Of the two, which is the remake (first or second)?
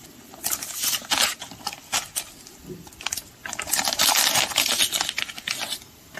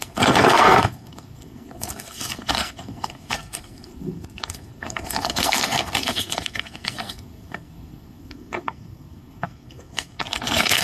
second